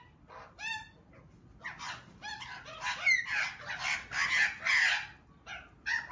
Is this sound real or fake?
real